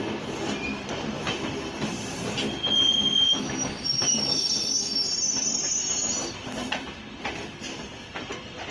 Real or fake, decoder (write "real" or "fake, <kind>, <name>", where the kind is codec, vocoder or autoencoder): real